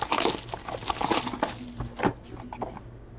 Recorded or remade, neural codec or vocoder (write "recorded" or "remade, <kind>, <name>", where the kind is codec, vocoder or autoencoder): recorded